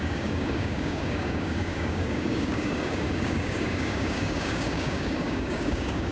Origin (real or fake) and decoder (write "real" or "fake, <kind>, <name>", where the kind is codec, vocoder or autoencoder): fake, codec, DAC